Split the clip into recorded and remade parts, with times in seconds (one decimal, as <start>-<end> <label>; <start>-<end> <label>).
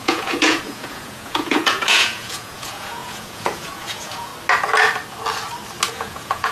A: 0.0-4.3 remade; 4.3-5.9 recorded; 5.9-6.5 remade